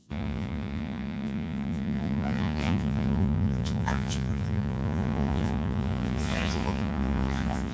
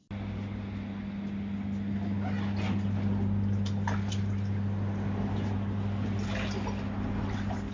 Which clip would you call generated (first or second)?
first